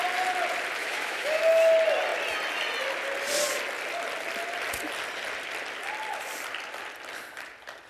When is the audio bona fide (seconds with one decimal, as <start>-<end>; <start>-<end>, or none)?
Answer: 0.0-0.8; 1.4-7.9